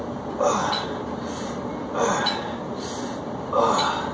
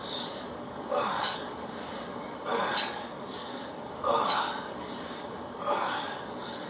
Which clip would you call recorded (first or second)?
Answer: first